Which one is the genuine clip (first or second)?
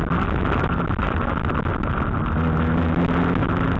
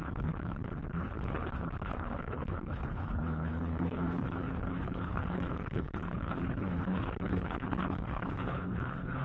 first